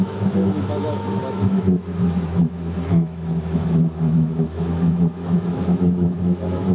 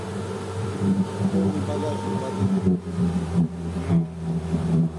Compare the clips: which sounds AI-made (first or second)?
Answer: first